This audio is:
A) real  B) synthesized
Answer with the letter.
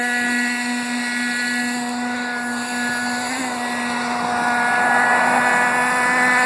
A